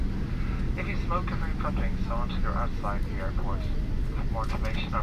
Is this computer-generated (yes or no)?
no